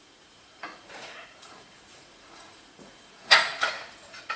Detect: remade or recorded remade